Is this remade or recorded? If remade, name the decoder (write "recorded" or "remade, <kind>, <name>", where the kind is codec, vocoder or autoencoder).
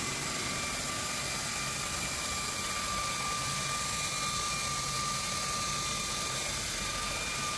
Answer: recorded